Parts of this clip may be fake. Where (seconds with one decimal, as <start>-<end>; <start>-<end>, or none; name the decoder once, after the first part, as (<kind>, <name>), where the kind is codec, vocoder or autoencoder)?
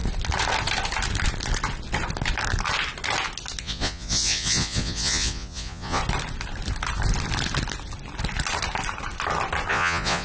3.6-6.0 (vocoder, Vocos); 9.7-10.2